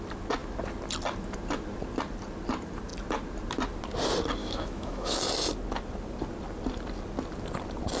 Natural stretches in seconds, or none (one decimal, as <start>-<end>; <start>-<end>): 0.0-4.4; 5.2-8.0